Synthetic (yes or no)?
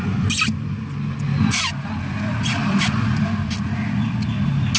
no